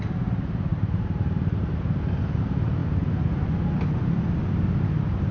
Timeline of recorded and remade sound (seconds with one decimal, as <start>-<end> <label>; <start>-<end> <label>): 0.0-0.7 recorded; 0.7-1.7 remade; 1.7-5.3 recorded